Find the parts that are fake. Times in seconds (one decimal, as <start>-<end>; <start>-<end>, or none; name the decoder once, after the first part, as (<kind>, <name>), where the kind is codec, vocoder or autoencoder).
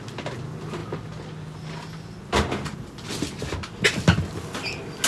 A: none